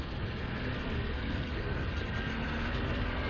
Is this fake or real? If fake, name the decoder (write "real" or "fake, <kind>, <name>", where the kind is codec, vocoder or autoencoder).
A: fake, codec, SNAC